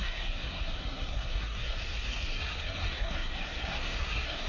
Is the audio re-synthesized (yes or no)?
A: yes